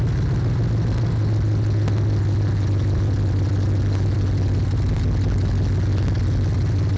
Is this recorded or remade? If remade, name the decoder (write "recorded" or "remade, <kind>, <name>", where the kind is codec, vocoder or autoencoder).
recorded